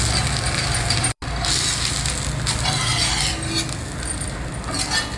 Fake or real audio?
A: real